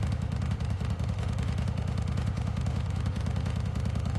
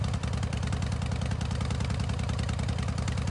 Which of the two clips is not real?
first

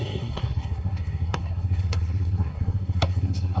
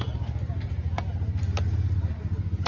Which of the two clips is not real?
first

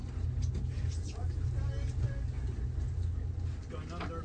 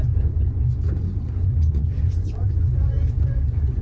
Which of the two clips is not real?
second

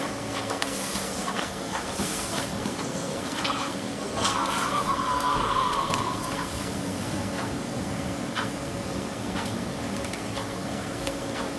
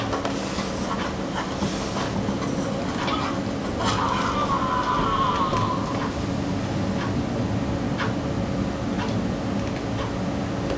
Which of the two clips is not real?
first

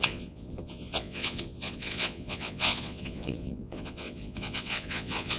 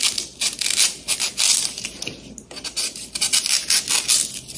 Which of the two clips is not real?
first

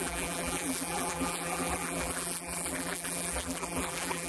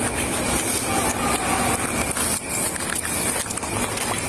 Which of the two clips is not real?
first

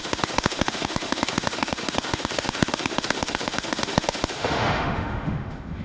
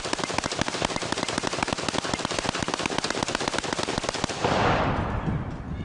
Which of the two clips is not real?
first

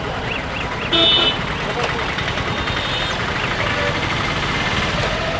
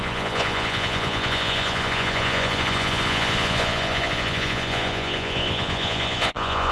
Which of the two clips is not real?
second